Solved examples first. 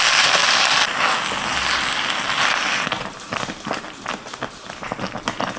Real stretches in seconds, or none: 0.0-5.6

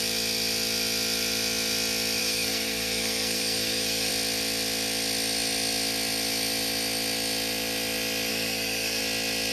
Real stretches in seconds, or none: 0.0-2.2; 4.1-8.3; 9.0-9.5